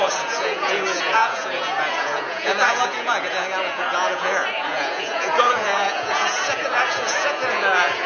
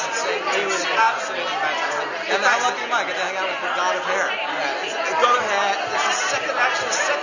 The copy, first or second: first